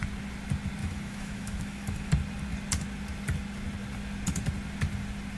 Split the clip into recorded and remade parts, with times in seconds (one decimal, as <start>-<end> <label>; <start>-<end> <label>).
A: 0.0-0.8 recorded; 0.8-2.1 remade; 2.1-5.4 recorded